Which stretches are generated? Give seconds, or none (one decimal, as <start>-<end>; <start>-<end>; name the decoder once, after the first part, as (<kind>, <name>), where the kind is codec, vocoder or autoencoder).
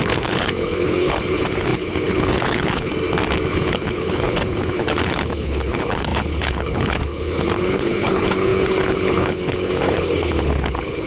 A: 0.0-2.9 (codec, HILCodec); 3.5-11.1